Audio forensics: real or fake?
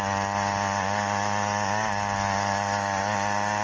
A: real